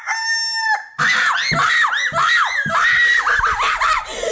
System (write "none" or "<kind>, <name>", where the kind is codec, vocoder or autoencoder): none